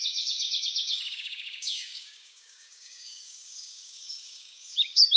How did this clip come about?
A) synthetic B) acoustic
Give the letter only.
A